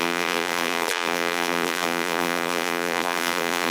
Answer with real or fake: fake